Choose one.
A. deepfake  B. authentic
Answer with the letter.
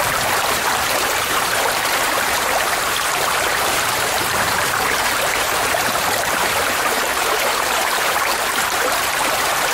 A